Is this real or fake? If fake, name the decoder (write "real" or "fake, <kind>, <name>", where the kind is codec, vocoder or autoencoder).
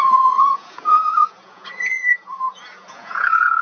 fake, vocoder, Vocos